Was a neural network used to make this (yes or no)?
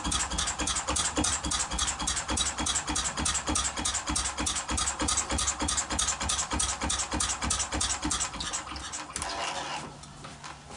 no